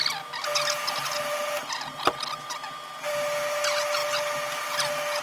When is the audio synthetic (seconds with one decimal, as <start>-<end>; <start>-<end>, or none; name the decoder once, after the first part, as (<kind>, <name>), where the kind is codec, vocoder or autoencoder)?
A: none